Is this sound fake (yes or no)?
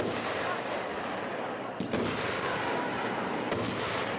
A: no